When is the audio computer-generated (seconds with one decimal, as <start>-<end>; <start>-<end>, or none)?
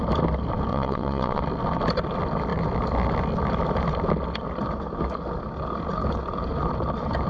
0.7-1.4